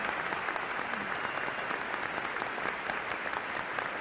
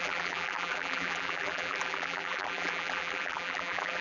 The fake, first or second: second